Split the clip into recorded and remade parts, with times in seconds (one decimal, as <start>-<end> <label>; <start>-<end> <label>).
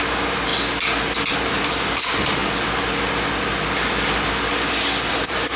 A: 0.0-0.5 remade; 0.5-1.3 recorded; 1.3-2.4 remade; 2.4-5.1 recorded; 5.1-5.6 remade